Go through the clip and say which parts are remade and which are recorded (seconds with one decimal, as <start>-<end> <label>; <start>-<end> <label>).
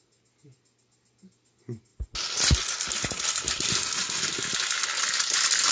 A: 0.0-5.7 recorded